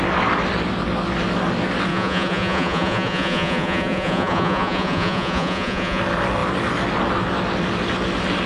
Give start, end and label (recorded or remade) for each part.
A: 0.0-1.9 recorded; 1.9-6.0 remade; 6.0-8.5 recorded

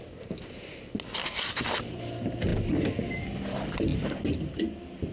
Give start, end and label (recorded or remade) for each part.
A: 0.0-1.2 recorded; 1.2-2.0 remade; 2.0-3.9 recorded; 3.9-4.6 remade; 4.6-5.1 recorded

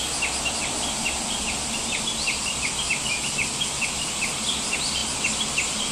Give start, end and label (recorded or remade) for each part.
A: 0.0-5.9 recorded

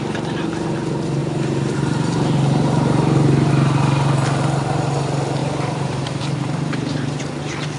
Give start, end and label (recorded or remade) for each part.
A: 0.0-1.2 recorded; 1.2-3.5 remade; 3.5-5.4 recorded; 5.4-7.2 remade; 7.2-7.8 recorded

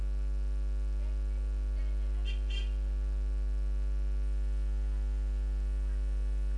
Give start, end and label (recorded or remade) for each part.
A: 0.0-6.6 recorded

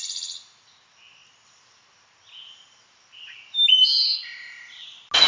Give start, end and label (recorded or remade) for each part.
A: 0.0-5.3 recorded